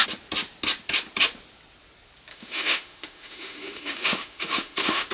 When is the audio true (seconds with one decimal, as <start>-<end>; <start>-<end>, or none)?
0.0-2.3